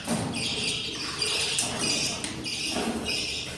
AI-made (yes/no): no